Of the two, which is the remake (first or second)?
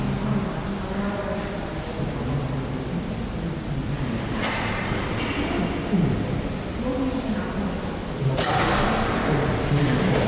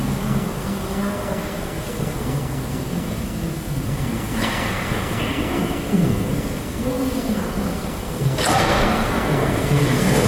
second